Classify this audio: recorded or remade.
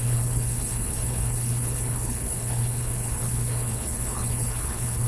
remade